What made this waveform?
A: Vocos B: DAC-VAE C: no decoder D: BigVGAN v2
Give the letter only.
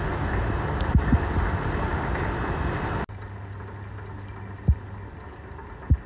C